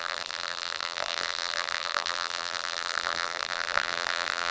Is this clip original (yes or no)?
no